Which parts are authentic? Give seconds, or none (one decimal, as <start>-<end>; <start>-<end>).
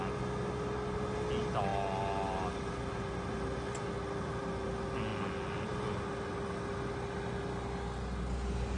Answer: 0.0-8.8